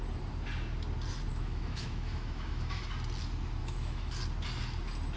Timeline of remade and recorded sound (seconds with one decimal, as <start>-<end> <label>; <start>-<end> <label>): 0.0-1.3 recorded; 1.3-2.8 remade; 2.8-3.6 recorded; 3.6-4.1 remade; 4.1-5.2 recorded